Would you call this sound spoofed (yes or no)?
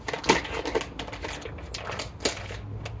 no